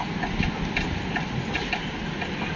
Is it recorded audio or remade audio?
recorded